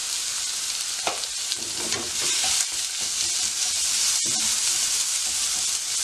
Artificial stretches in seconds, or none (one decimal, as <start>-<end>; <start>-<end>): 0.0-2.8